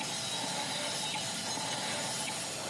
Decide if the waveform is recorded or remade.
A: recorded